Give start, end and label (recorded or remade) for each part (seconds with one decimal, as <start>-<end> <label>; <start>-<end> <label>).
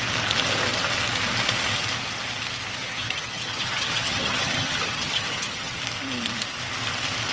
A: 0.0-2.8 recorded; 2.8-5.8 remade; 5.8-7.3 recorded